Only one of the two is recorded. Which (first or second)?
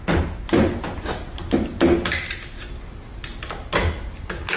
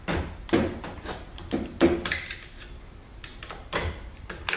first